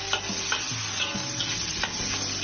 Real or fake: real